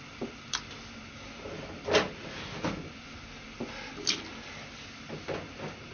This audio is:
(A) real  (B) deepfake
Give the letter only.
A